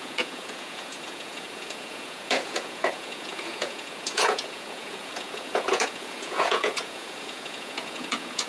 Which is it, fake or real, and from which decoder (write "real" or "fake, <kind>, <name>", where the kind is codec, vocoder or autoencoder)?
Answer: fake, vocoder, Vocos